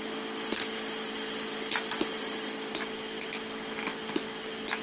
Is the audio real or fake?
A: real